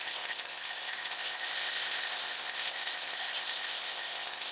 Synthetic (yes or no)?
yes